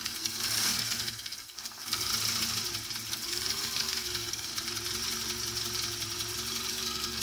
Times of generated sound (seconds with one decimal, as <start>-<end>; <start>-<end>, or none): 0.0-2.1; 3.1-4.5; 6.7-7.2